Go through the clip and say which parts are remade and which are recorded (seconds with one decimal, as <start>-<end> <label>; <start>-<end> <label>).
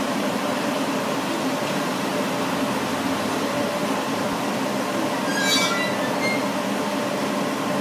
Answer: 0.0-2.1 remade; 2.1-3.3 recorded; 3.3-3.8 remade; 3.8-4.6 recorded; 4.6-5.3 remade; 5.3-7.8 recorded